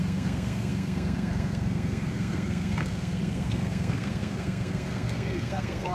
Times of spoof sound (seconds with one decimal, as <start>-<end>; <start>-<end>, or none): 0.0-5.9

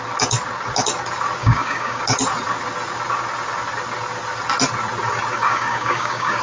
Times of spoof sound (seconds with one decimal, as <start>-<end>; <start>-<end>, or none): 1.4-2.0; 5.3-6.4